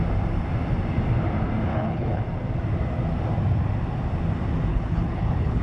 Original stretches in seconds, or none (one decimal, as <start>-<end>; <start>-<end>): 0.0-1.7; 2.2-4.7

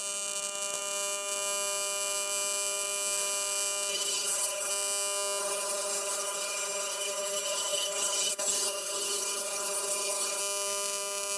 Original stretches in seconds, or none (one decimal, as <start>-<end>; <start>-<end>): 0.0-3.9; 4.7-5.4; 10.4-11.4

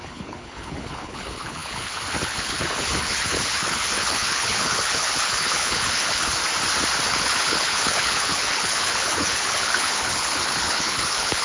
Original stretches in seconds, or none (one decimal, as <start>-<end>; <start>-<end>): 6.4-7.1

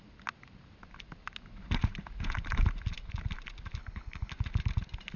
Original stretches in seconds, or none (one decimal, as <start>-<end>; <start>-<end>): 0.0-3.8; 4.3-5.2

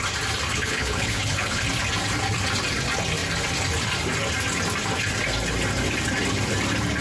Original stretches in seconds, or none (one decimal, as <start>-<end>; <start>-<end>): 0.0-0.5; 1.6-7.0